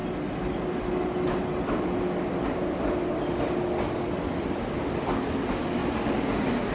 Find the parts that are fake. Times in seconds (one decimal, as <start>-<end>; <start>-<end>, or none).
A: none